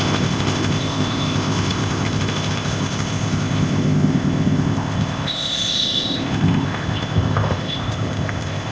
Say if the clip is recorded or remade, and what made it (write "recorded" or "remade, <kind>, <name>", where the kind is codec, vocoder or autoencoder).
remade, codec, ZipCodec